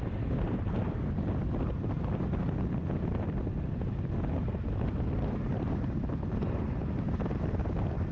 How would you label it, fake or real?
real